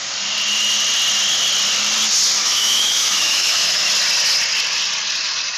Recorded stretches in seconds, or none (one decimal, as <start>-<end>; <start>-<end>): 0.0-2.4; 3.9-5.6

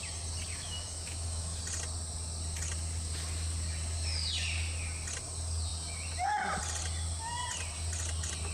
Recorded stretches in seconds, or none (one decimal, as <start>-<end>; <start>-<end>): 0.0-0.5; 1.6-8.5

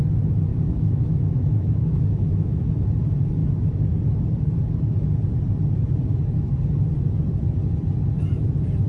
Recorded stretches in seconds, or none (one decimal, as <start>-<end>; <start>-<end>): 0.0-0.5; 2.7-8.9

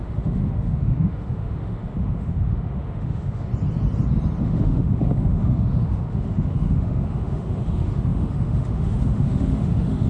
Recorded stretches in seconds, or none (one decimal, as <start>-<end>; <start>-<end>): 3.5-4.4

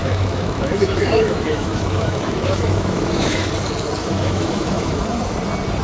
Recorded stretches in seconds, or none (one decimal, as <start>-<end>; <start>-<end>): 3.5-4.0; 5.0-5.8